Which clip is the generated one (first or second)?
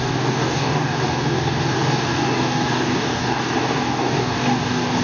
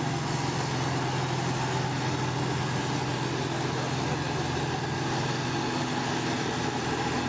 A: first